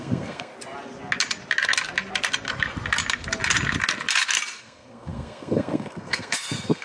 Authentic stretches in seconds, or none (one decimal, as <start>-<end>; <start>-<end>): 0.5-4.6